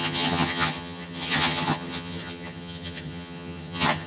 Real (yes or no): no